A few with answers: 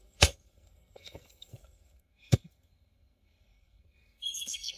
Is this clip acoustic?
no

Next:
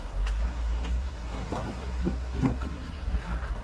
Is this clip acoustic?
no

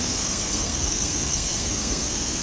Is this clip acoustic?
no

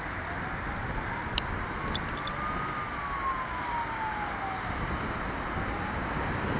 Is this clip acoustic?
yes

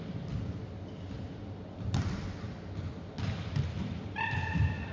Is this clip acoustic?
yes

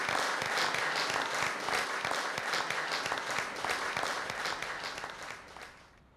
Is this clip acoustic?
yes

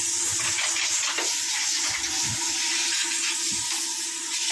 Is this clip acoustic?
yes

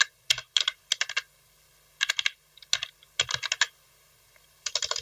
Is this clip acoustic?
yes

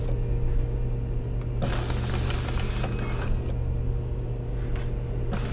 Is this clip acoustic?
yes